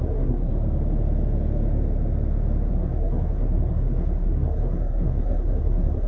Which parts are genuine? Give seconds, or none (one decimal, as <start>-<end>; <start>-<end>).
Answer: 0.5-2.7